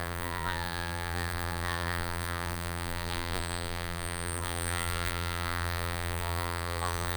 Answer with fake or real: fake